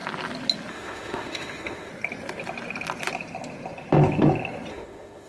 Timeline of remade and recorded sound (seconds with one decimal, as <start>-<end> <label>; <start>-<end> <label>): 0.0-0.7 recorded; 0.7-1.9 remade; 1.9-4.7 recorded; 4.7-5.3 remade